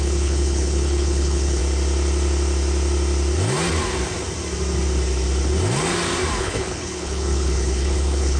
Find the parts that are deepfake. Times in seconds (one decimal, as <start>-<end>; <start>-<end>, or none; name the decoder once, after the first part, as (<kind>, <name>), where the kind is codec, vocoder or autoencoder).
0.0-1.6 (codec, HILCodec); 6.4-8.4

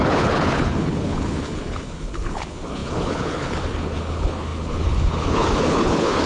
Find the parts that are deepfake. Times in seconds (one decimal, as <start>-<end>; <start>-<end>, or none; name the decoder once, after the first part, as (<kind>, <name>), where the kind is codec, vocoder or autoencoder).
0.0-6.3 (codec, HILCodec)

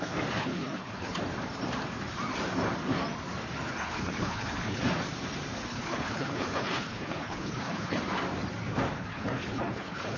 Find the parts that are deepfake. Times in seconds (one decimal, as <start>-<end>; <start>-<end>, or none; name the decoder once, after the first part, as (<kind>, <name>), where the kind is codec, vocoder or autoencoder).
0.4-1.2 (codec, HILCodec); 3.8-4.8; 5.7-8.0; 9.1-10.2

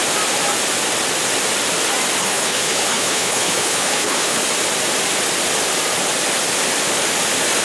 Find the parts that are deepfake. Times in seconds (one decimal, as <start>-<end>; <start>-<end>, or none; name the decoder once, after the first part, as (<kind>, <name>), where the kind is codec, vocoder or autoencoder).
2.2-4.4 (codec, HILCodec)

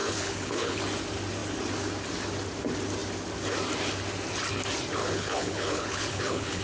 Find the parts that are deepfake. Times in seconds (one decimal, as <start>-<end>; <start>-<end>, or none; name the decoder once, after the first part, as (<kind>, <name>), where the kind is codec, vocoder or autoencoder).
0.0-0.8 (codec, HILCodec); 5.0-6.6

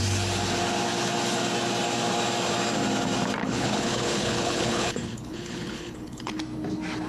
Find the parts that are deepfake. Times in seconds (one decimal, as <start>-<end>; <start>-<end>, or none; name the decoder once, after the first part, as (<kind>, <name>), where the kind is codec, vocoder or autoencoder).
3.4-6.4 (codec, HILCodec)

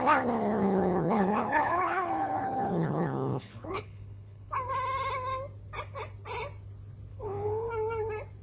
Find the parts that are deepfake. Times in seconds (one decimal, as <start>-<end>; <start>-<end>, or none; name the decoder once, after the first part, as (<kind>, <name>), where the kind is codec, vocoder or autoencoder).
0.6-4.5 (codec, HILCodec); 7.1-7.7